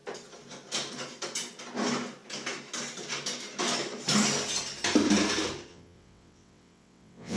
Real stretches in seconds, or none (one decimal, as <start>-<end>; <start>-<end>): 0.0-5.7